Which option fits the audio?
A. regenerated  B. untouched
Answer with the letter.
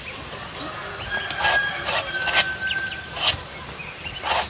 B